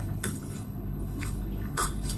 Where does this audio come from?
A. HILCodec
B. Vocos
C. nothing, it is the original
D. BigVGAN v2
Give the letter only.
A